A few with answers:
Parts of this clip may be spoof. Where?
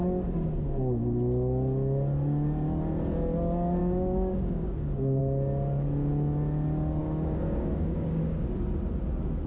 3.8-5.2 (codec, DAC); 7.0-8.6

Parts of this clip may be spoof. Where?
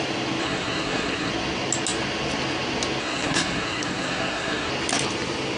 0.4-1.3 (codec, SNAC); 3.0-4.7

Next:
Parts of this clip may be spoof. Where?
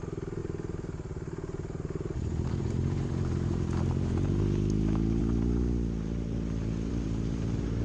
0.4-4.4 (vocoder, BigVGAN v2)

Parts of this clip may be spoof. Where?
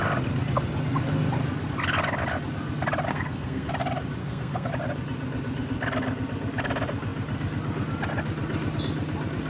3.1-3.7 (codec, SNAC); 4.2-4.7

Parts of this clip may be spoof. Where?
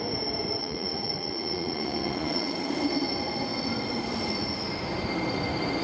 0.6-2.7 (vocoder, Vocos)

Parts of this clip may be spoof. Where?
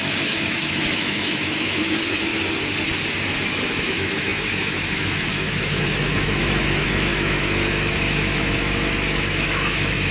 0.0-2.3 (autoencoder, DAC-VAE); 3.8-10.1